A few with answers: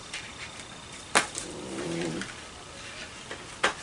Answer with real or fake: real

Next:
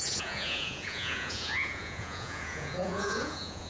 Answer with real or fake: fake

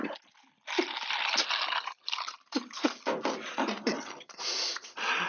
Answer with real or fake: real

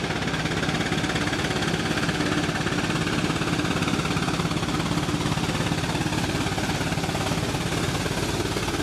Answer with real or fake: real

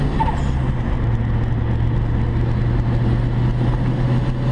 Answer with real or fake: real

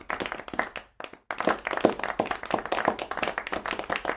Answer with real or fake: real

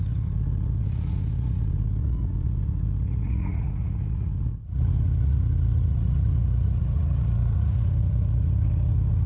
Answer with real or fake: fake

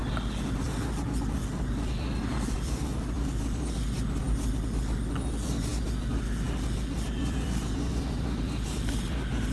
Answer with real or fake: real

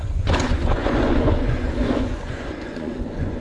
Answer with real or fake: fake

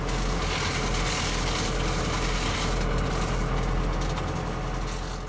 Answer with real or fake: real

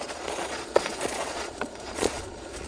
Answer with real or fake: fake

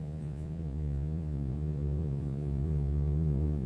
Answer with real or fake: fake